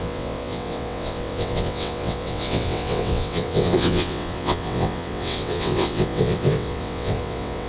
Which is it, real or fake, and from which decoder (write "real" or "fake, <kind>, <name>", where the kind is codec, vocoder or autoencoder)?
fake, vocoder, WaveNeXt